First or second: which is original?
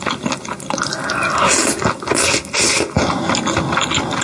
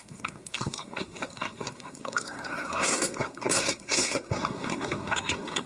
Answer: first